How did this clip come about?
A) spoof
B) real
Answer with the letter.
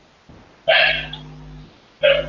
B